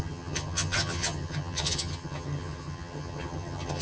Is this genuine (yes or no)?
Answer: no